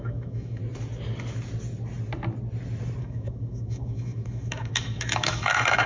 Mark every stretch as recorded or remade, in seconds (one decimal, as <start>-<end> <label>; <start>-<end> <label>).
0.0-0.6 remade; 0.6-3.0 recorded; 3.0-5.9 remade